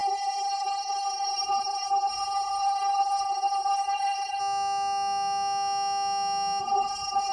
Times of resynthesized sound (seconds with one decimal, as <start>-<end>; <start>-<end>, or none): 0.0-4.4; 6.6-7.3